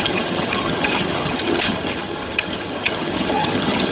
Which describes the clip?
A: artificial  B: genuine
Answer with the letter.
A